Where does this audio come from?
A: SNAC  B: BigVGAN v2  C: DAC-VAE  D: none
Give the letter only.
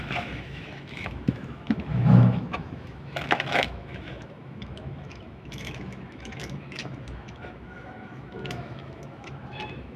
C